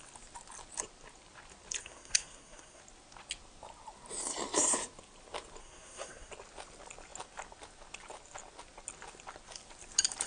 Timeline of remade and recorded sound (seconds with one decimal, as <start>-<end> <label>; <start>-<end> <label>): 0.0-1.8 recorded; 1.8-2.8 remade; 2.8-5.6 recorded; 5.6-6.3 remade; 6.3-10.3 recorded